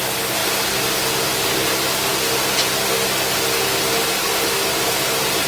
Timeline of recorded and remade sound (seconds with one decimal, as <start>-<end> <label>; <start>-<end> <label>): 0.0-0.4 remade; 0.4-1.1 recorded; 1.1-2.1 remade; 2.1-5.5 recorded